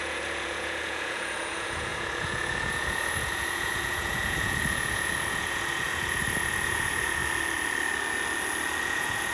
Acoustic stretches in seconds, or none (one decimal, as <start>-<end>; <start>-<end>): 7.2-8.8